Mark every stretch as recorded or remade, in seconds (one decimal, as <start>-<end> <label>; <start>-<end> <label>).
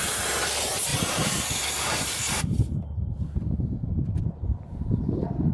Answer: 0.0-5.5 remade